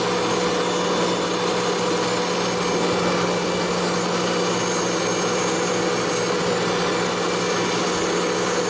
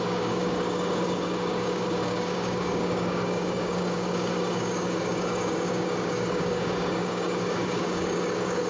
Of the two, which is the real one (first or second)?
first